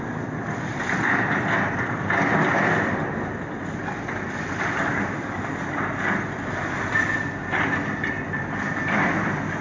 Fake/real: real